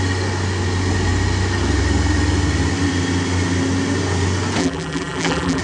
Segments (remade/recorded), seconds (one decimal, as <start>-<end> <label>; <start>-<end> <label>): 0.0-4.6 recorded; 4.6-5.6 remade